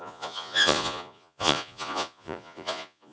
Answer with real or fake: fake